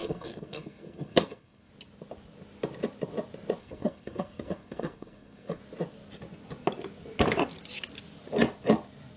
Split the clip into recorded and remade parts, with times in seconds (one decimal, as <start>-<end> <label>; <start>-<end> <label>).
0.0-1.7 remade; 1.7-3.6 recorded; 3.6-5.6 remade; 5.6-9.2 recorded